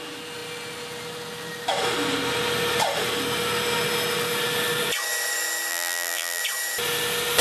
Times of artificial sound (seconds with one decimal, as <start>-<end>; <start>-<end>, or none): 5.7-6.4